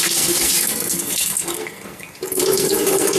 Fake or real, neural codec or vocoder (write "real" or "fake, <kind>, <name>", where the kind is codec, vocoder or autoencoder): fake, codec, SNAC